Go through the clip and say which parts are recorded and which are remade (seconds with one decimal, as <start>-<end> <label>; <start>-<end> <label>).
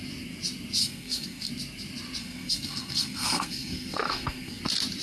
0.0-0.8 recorded; 0.8-1.5 remade; 1.5-2.2 recorded; 2.2-4.6 remade; 4.6-5.0 recorded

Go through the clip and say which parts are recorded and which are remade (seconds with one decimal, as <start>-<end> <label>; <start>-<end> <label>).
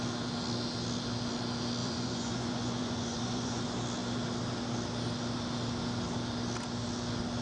0.0-1.8 recorded; 1.8-3.6 remade; 3.6-7.4 recorded